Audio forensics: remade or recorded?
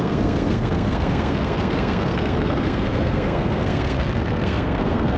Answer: remade